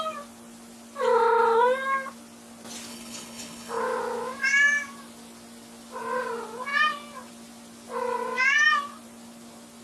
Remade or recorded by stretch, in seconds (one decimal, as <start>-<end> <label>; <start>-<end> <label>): 0.0-2.9 recorded; 2.9-3.8 remade; 3.8-9.8 recorded